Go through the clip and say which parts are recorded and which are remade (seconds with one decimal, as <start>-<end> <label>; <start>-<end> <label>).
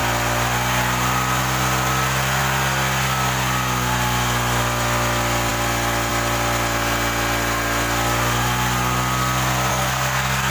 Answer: 0.0-9.7 recorded; 9.7-10.5 remade